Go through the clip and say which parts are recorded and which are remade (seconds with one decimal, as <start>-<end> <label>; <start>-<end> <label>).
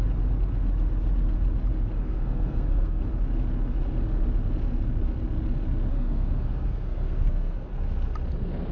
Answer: 0.0-2.0 recorded; 2.0-3.0 remade; 3.0-5.9 recorded; 5.9-7.7 remade; 7.7-8.7 recorded